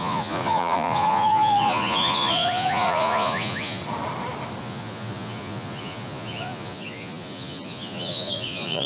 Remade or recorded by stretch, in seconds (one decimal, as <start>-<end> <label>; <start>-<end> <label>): 0.0-3.8 remade; 3.8-4.6 recorded; 4.6-8.9 remade